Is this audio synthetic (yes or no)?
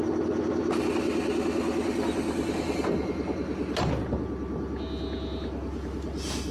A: no